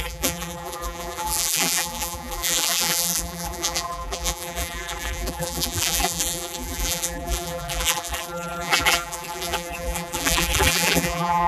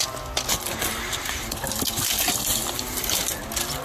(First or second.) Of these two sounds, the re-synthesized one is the first